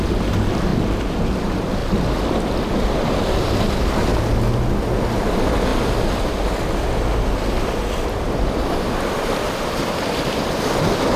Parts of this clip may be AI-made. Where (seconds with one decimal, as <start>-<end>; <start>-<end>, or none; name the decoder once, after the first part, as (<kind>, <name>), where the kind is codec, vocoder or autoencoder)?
1.8-3.5 (vocoder, BigVGAN v2); 5.7-10.5